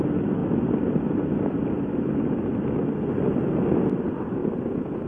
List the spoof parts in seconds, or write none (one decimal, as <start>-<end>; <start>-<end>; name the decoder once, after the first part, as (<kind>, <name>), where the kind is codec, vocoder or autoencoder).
none

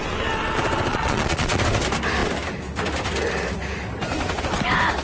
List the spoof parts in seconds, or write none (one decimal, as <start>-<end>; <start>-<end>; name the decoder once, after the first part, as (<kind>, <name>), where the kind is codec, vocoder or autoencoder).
0.9-1.6 (vocoder, Vocos)

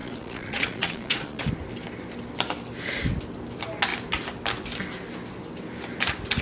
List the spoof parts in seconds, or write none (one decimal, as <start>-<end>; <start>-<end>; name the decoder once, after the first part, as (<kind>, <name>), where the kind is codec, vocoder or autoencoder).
0.0-1.5 (vocoder, Vocos)

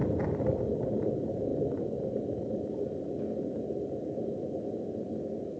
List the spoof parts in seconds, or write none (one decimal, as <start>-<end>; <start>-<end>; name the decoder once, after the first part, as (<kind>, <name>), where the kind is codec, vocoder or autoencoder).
0.0-1.1 (vocoder, BigVGAN v2); 1.5-4.6

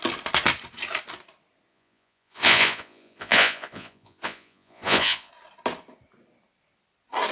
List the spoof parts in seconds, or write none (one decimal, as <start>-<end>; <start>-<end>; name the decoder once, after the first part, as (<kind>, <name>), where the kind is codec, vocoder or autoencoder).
1.7-5.3 (vocoder, Vocos)

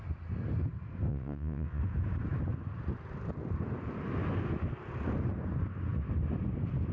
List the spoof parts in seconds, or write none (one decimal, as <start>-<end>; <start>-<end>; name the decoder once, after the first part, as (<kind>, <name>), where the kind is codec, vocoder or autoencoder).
1.1-1.8 (vocoder, WaveNeXt)